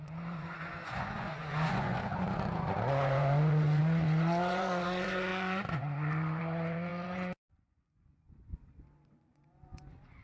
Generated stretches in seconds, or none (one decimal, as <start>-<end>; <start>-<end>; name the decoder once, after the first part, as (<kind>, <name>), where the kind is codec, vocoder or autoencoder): 0.0-10.2 (vocoder, Vocos)